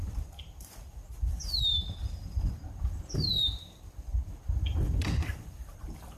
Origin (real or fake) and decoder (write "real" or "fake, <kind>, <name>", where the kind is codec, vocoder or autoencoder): fake, vocoder, BigVGAN v2